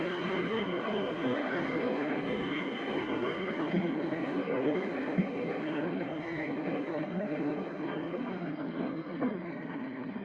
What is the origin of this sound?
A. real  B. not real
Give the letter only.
B